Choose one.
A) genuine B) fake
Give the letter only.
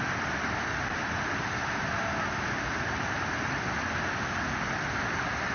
A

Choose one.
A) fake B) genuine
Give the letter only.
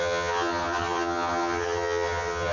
A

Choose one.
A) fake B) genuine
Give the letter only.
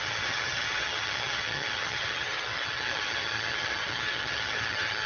A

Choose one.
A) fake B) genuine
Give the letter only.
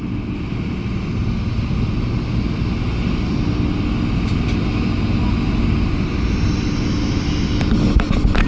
B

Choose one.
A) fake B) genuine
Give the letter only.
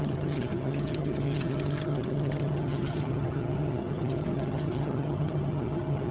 A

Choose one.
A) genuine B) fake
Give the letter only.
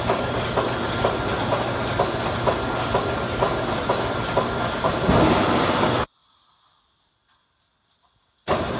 A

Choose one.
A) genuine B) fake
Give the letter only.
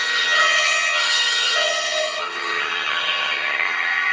B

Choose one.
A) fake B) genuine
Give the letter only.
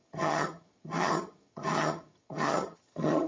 A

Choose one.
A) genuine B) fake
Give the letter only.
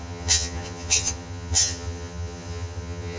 B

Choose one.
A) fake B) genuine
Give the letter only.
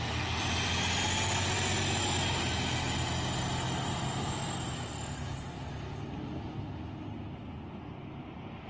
B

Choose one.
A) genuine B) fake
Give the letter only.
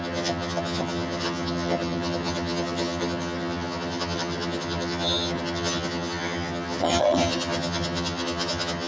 B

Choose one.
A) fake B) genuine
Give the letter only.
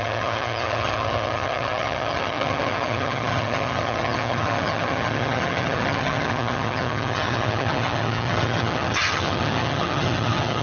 A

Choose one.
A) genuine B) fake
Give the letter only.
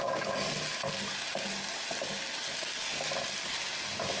A